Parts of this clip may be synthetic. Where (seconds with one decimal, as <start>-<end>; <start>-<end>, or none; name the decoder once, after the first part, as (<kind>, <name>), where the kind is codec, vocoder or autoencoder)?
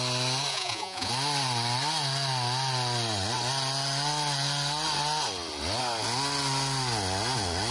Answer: 0.5-1.1 (vocoder, Vocos)